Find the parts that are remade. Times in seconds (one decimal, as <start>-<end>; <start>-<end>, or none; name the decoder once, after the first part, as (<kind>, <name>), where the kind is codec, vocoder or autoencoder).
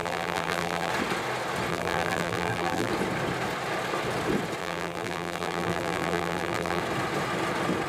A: 0.0-0.9 (vocoder, BigVGAN v2); 1.7-2.9; 4.6-6.8